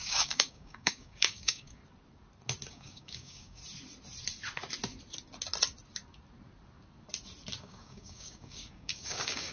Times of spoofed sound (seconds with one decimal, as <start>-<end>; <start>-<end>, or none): 0.0-1.8; 2.7-3.6; 7.6-9.5